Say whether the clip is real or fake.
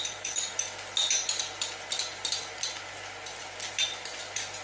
real